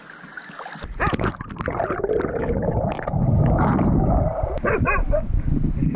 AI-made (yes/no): no